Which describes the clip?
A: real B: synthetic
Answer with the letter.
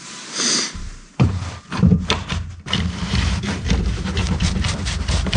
B